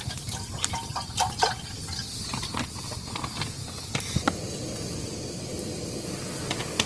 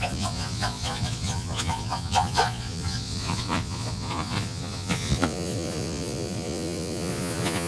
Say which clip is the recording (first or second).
first